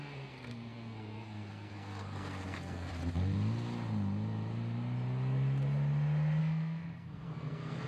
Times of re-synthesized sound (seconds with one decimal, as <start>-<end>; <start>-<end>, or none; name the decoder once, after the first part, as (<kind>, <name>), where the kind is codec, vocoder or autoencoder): 0.0-2.9 (codec, SNAC); 6.4-7.9